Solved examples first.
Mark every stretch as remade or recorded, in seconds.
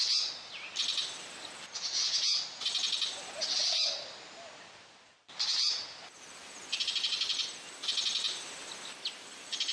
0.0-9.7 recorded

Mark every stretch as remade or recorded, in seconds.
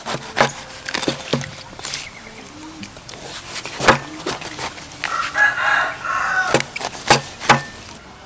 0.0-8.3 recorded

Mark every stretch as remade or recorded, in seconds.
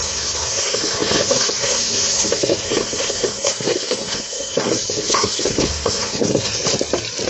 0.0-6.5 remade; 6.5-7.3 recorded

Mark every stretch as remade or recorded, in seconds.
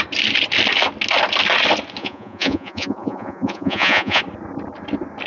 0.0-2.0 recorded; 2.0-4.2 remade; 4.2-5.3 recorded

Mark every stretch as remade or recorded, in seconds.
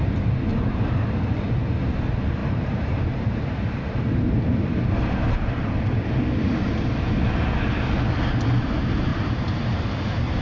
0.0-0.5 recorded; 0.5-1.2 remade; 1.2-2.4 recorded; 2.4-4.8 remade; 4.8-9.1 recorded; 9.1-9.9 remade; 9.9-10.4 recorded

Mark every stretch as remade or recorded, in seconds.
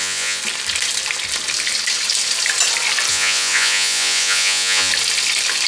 0.0-0.4 remade; 0.4-3.1 recorded; 3.1-4.9 remade; 4.9-5.7 recorded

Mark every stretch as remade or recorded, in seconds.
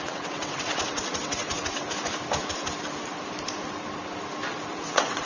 0.0-1.8 remade; 1.8-4.7 recorded; 4.7-5.3 remade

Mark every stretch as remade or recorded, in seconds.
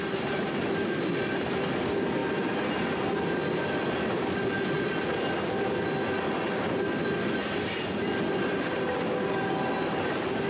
0.0-10.5 recorded